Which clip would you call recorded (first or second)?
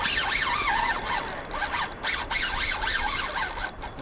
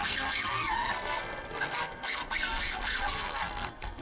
first